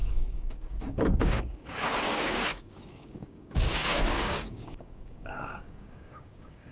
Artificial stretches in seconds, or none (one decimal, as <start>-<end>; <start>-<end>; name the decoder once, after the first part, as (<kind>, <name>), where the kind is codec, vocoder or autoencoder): 0.0-6.7 (codec, DAC)